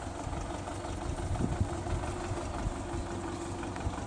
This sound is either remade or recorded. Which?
recorded